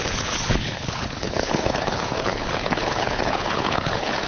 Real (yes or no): no